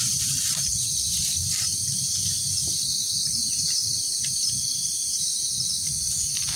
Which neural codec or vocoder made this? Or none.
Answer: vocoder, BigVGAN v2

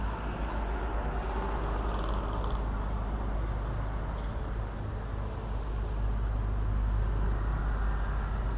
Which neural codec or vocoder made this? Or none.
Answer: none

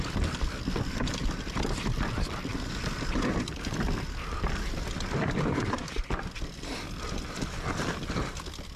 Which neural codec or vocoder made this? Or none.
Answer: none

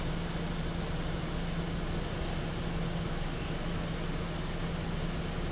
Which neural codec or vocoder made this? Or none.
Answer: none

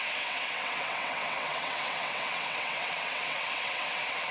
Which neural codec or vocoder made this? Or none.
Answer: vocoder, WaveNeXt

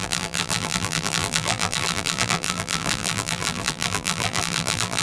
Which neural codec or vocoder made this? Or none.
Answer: vocoder, BigVGAN v2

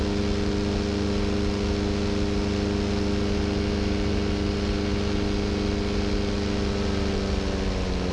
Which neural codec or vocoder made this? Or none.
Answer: none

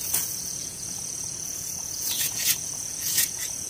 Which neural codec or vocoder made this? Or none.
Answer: vocoder, Vocos